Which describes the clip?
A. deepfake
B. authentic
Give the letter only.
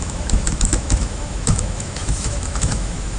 A